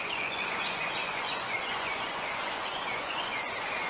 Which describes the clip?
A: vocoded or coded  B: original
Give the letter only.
A